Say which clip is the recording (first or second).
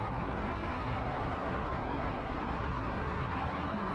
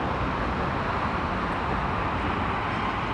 second